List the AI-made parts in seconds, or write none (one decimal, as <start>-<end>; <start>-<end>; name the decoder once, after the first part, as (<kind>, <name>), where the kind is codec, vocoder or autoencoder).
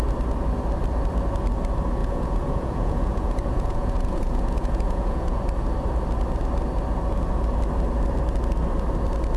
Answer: 2.0-5.4 (vocoder, Vocos)